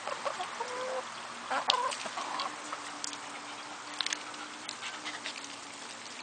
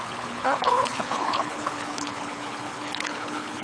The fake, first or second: second